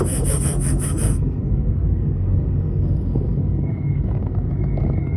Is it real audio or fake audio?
fake